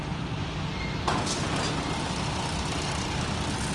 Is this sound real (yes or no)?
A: yes